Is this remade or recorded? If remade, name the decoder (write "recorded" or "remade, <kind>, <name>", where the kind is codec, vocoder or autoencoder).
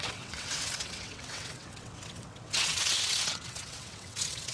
remade, vocoder, WaveNeXt